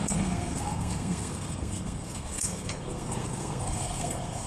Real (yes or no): no